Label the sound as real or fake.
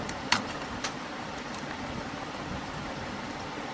fake